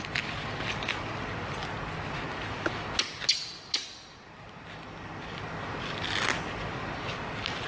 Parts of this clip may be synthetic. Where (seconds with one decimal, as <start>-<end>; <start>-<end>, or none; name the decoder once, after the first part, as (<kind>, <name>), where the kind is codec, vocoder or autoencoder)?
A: none